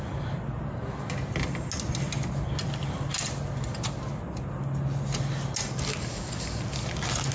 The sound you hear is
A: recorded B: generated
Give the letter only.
A